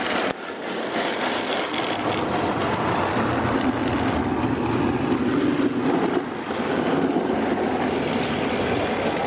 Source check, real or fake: real